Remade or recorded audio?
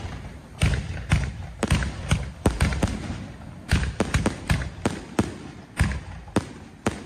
recorded